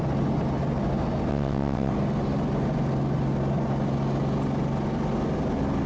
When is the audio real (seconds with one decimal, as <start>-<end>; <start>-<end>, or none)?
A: 0.0-1.3; 1.9-5.9